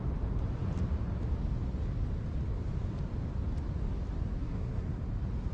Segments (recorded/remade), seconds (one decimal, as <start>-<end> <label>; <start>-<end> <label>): 0.0-4.4 recorded; 4.4-5.0 remade; 5.0-5.5 recorded